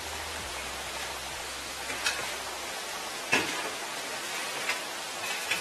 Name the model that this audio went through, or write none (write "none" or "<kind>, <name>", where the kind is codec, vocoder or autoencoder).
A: none